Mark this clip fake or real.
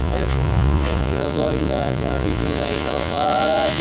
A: fake